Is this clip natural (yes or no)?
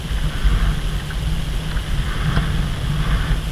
yes